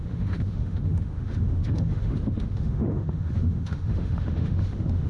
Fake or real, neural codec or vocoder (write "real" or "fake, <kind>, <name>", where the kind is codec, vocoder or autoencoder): fake, autoencoder, DAC-VAE